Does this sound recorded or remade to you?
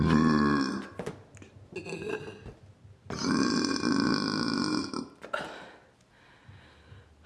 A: recorded